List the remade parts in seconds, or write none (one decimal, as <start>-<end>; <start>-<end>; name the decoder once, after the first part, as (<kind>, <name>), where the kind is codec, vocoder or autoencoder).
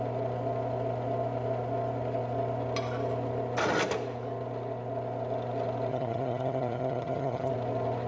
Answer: 5.9-7.5 (vocoder, HiFi-GAN)